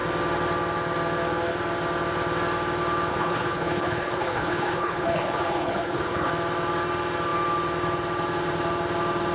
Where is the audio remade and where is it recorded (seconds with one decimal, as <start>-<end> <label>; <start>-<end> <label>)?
0.0-3.1 recorded; 3.1-6.3 remade; 6.3-9.3 recorded